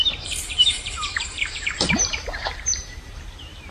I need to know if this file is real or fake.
fake